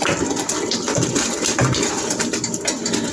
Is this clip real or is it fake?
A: real